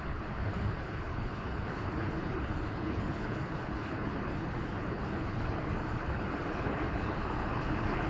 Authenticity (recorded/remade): remade